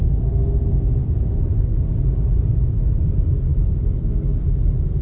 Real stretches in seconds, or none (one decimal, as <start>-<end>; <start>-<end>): 0.0-3.5; 4.5-5.0